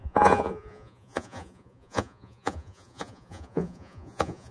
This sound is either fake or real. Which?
fake